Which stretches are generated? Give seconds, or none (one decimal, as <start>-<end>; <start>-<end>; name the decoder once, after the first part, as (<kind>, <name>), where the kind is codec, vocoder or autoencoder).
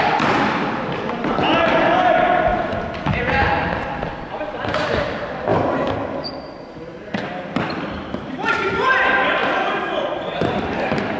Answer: 0.0-2.5 (vocoder, BigVGAN v2); 3.2-11.2